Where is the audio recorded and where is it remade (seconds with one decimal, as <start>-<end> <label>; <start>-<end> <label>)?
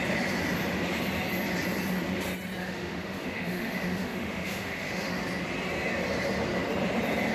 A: 0.0-2.6 recorded; 2.6-5.2 remade; 5.2-7.3 recorded